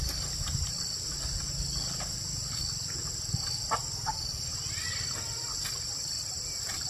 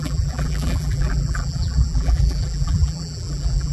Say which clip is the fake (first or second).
second